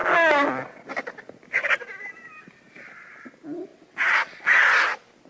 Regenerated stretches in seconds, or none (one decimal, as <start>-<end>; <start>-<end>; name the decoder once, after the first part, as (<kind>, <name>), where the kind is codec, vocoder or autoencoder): none